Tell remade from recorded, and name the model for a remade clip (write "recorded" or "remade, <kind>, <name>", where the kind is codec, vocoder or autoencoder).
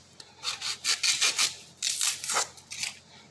recorded